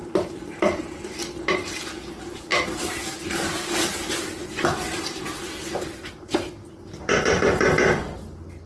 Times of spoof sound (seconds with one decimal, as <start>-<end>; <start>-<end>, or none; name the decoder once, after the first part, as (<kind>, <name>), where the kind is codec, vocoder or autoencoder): 0.0-0.5 (vocoder, BigVGAN v2); 2.5-3.7; 4.4-7.7